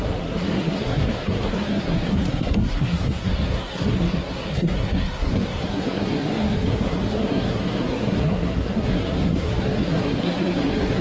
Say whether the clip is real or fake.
fake